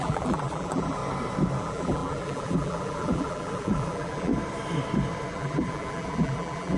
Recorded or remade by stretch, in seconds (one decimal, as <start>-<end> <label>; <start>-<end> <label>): 0.0-1.0 remade; 1.0-1.6 recorded; 1.6-4.3 remade; 4.3-5.3 recorded; 5.3-6.8 remade